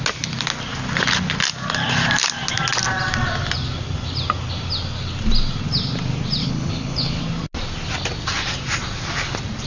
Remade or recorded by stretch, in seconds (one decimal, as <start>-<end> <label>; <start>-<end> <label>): 0.0-6.4 recorded; 6.4-7.2 remade; 7.2-9.7 recorded